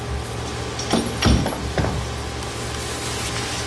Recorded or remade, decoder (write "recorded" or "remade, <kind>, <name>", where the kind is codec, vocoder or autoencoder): recorded